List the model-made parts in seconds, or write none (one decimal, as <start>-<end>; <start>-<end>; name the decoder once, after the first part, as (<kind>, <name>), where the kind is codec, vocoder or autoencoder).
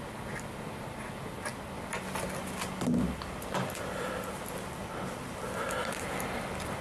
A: none